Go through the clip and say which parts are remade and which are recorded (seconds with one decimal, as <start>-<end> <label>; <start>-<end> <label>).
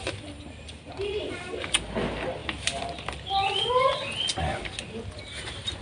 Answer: 0.0-5.8 recorded